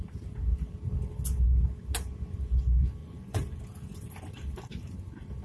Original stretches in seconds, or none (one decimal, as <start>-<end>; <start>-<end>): 0.0-3.0; 3.6-5.4